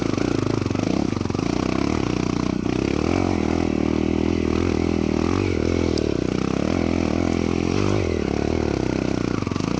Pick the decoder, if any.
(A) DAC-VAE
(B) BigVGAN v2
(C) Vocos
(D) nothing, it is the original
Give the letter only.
D